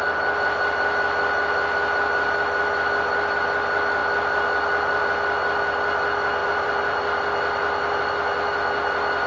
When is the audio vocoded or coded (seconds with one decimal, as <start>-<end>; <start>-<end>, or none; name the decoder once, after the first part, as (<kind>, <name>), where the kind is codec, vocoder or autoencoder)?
6.4-8.0 (vocoder, BigVGAN v2)